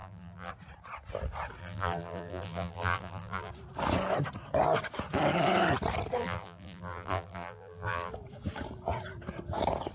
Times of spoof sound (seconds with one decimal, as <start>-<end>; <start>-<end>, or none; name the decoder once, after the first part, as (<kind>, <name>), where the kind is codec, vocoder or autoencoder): 0.0-0.5 (vocoder, BigVGAN v2); 1.6-3.5; 6.2-8.1

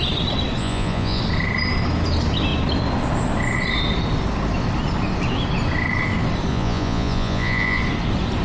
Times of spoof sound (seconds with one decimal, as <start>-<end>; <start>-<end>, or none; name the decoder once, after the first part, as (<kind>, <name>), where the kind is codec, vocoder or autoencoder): 0.6-1.2 (vocoder, Vocos); 6.5-7.8

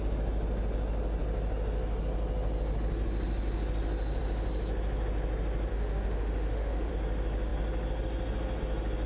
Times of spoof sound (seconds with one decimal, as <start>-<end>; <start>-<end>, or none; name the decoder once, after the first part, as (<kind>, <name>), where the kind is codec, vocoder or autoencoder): 5.7-6.9 (autoencoder, DAC-VAE)

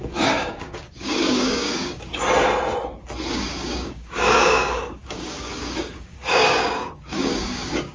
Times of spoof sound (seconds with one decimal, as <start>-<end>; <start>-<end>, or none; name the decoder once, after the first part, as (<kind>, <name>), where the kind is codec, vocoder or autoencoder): 0.0-2.1 (codec, DAC); 3.3-7.9

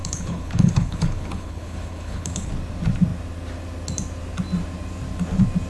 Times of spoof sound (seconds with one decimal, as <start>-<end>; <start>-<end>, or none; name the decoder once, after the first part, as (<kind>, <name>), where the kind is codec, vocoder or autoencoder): 0.0-2.5 (codec, HILCodec)